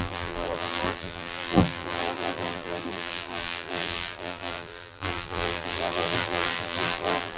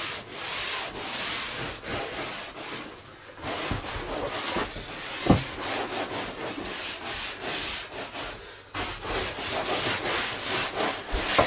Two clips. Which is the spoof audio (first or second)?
first